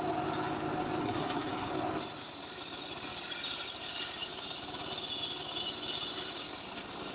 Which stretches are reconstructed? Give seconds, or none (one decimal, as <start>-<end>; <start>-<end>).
1.0-1.7